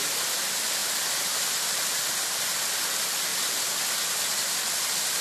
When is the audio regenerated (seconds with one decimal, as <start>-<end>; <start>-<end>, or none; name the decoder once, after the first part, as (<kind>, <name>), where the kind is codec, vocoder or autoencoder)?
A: none